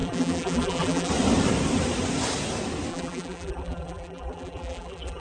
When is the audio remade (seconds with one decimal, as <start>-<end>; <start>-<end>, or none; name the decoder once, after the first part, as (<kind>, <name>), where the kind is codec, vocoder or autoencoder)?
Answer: 0.0-1.1 (vocoder, BigVGAN v2); 2.9-5.2